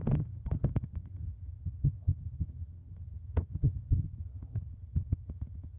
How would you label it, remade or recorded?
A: remade